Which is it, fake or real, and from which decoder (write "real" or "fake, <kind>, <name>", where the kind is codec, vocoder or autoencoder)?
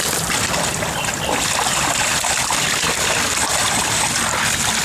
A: real